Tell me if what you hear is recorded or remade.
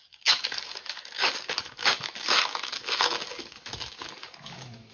remade